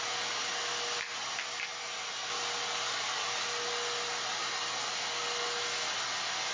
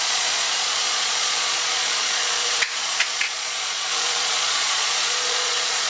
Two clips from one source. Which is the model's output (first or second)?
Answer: second